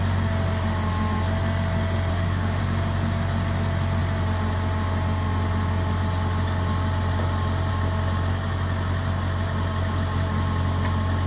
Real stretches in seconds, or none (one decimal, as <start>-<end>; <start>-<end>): 0.0-2.1; 2.6-11.3